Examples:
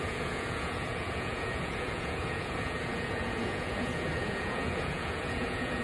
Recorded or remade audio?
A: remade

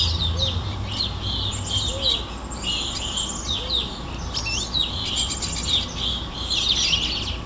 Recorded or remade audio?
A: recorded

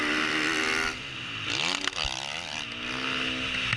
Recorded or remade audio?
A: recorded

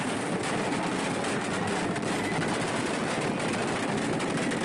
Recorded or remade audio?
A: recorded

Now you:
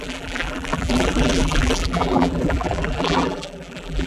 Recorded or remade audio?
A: remade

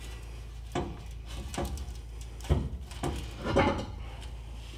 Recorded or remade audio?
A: recorded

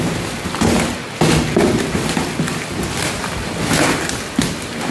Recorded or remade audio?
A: recorded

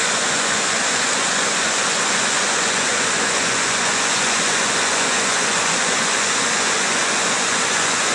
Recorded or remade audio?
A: remade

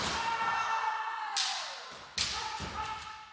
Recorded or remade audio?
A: recorded